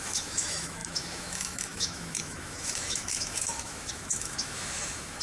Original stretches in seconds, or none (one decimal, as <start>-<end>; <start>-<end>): none